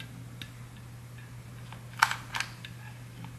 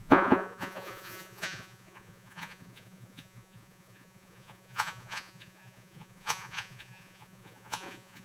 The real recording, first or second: first